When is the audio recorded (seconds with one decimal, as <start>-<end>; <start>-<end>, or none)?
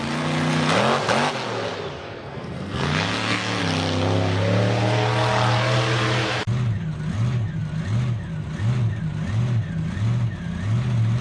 0.0-2.0; 3.6-11.2